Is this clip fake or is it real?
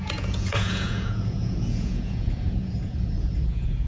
fake